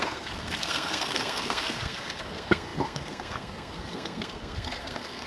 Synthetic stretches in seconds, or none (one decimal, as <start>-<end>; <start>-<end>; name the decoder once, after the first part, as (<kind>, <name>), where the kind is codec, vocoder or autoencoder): 0.0-5.3 (codec, SNAC)